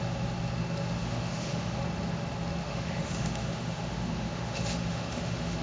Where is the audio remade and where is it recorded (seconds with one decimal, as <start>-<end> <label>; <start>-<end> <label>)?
0.0-1.0 recorded; 1.0-1.8 remade; 1.8-2.6 recorded; 2.6-5.6 remade